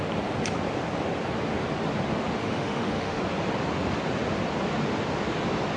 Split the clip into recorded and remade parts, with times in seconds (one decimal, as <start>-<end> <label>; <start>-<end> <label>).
0.0-2.4 recorded; 2.4-3.2 remade; 3.2-5.8 recorded